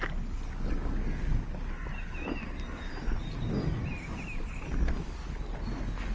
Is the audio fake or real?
real